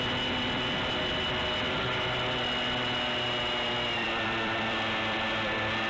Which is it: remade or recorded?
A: remade